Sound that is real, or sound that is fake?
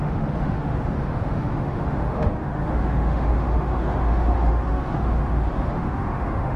fake